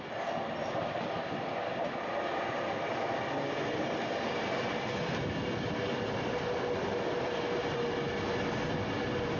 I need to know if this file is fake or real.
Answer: real